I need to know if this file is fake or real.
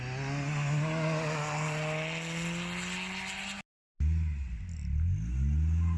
real